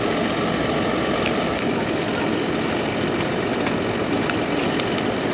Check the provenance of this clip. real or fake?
real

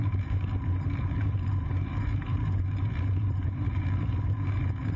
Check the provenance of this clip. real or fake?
fake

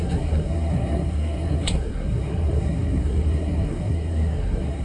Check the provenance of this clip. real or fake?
fake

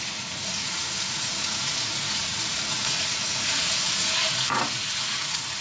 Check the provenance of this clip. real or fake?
fake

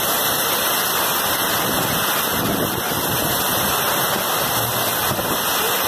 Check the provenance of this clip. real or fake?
real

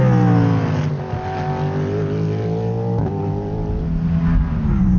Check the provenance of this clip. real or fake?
real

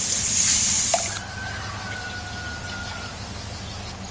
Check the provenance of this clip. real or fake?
real